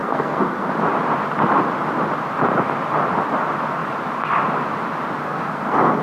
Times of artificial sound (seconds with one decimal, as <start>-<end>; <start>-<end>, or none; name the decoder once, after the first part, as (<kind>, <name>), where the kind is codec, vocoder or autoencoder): 0.0-0.7 (codec, SNAC); 5.2-6.0